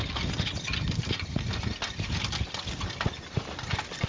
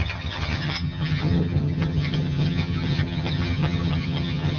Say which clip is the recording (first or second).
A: first